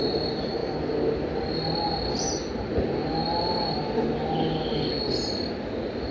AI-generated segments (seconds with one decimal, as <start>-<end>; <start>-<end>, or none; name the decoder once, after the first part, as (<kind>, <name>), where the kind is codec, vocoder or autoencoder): none